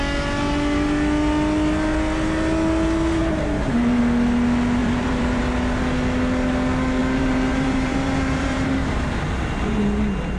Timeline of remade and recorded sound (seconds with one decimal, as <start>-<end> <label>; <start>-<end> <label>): 0.0-3.2 recorded; 3.2-4.0 remade; 4.0-4.8 recorded; 4.8-5.4 remade; 5.4-7.0 recorded; 7.0-9.1 remade; 9.1-10.4 recorded